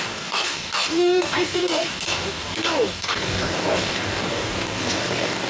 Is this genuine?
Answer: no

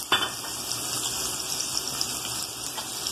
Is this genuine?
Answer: yes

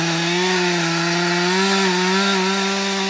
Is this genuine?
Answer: yes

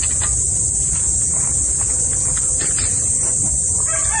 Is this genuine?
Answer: yes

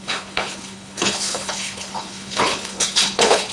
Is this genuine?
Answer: no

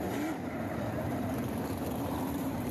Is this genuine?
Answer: no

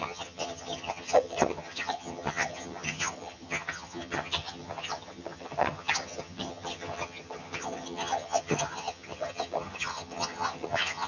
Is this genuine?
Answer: no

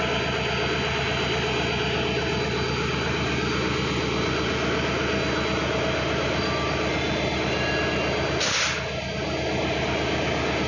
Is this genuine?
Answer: yes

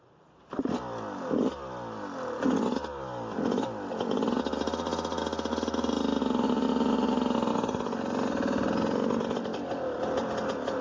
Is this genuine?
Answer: yes